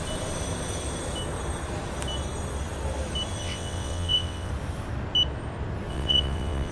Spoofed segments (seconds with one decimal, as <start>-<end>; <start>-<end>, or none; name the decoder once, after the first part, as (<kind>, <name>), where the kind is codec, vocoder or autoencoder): 3.4-4.5 (vocoder, WaveNeXt); 5.9-6.7